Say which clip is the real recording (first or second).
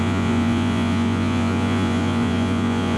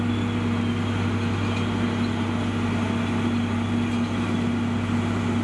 second